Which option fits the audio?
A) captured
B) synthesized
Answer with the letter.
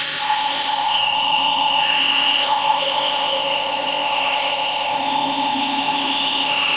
B